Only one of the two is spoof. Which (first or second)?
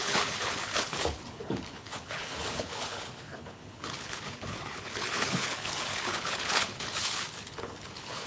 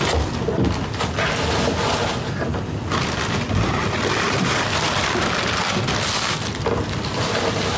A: first